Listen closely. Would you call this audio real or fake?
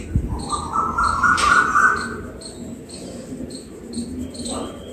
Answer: real